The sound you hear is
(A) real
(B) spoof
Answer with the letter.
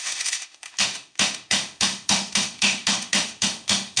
B